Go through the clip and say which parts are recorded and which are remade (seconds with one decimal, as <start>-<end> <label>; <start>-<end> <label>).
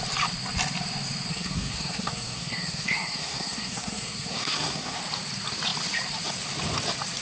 0.0-1.3 recorded; 1.3-5.0 remade; 5.0-7.2 recorded